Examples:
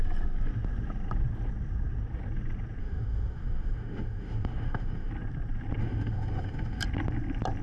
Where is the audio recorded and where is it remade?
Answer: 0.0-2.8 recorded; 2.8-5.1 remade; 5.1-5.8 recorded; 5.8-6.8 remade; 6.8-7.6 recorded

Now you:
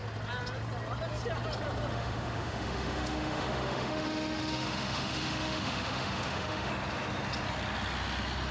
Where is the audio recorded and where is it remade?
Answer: 0.0-1.9 recorded; 1.9-6.7 remade; 6.7-8.5 recorded